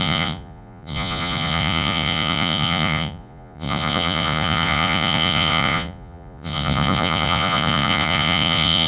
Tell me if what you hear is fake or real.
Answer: fake